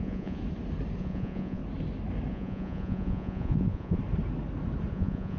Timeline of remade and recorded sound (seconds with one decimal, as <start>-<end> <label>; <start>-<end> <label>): 0.0-0.4 remade; 0.4-1.0 recorded; 1.0-1.6 remade; 1.6-2.3 recorded; 2.3-4.0 remade; 4.0-4.9 recorded; 4.9-5.4 remade